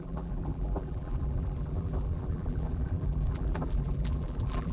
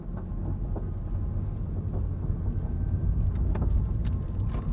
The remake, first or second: first